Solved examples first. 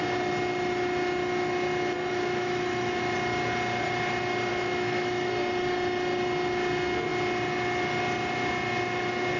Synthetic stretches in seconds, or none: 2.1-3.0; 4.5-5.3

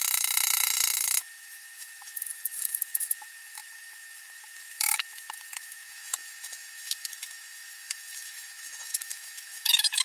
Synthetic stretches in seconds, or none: 0.0-10.0

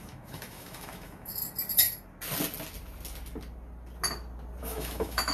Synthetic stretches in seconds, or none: 0.0-1.4; 4.6-5.3

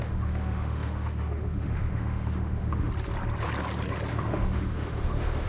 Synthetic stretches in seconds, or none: 0.0-2.9; 4.1-5.5

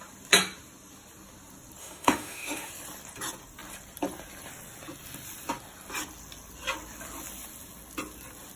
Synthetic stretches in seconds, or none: 1.8-2.7

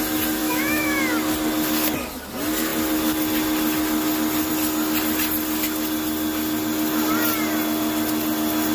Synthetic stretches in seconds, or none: 0.4-1.0